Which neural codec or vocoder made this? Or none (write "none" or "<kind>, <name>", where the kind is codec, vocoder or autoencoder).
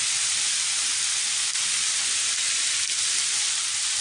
none